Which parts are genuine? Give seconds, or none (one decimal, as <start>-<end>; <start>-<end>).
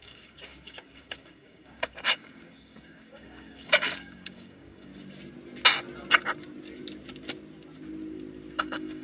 4.9-8.6